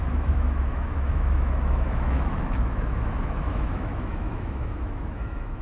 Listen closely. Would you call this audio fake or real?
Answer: fake